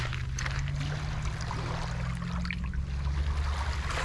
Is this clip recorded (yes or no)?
yes